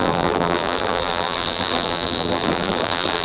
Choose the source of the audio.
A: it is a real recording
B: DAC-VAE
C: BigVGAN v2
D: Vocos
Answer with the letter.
C